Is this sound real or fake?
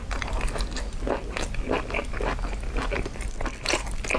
real